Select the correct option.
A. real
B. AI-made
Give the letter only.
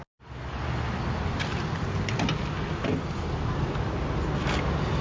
A